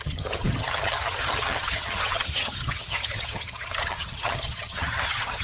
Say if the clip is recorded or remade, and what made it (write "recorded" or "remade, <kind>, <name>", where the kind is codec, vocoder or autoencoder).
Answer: remade, vocoder, HiFi-GAN